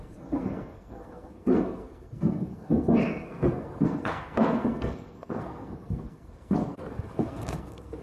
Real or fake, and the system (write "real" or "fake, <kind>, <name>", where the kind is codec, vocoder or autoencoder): fake, codec, SNAC